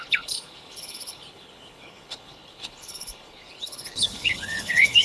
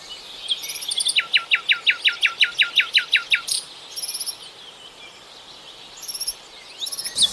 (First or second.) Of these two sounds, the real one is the second